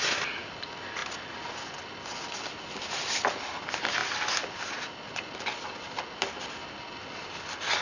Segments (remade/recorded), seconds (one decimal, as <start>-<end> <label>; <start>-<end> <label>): 0.0-7.8 recorded